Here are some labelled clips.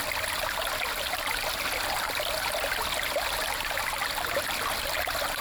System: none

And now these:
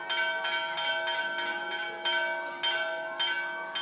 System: none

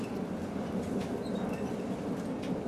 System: none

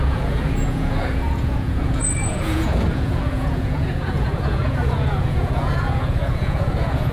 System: vocoder, Vocos